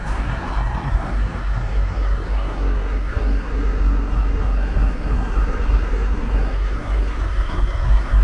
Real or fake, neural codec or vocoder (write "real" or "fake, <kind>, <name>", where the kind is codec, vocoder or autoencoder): fake, codec, SNAC